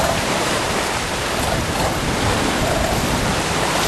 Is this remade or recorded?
recorded